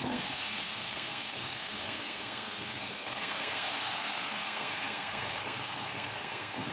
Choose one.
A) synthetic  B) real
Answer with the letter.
A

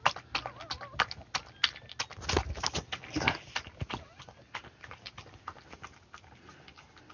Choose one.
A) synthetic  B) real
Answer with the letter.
B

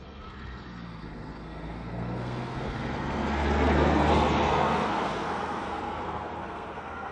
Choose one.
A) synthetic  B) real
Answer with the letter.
A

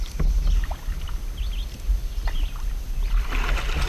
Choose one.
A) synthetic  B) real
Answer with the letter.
B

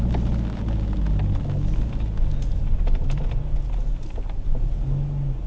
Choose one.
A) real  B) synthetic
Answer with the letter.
A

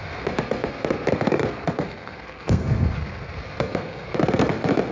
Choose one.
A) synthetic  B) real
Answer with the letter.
A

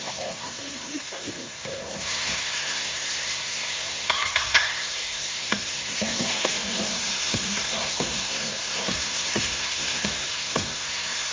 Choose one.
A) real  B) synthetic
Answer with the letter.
B